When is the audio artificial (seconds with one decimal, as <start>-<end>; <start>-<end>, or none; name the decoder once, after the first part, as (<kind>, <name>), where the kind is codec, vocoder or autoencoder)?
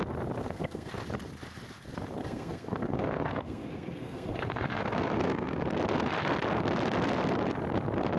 0.4-0.9 (codec, SNAC); 2.2-5.6